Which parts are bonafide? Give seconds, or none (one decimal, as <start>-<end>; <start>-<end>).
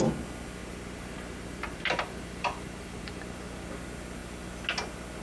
0.0-0.6; 3.7-5.2